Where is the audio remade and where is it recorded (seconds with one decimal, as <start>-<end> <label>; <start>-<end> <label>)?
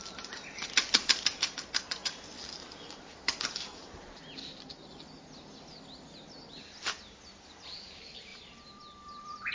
0.0-2.0 recorded; 2.0-4.2 remade; 4.2-8.3 recorded; 8.3-9.5 remade